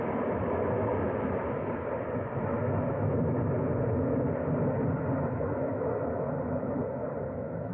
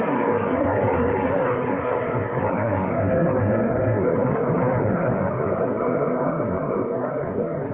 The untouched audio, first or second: first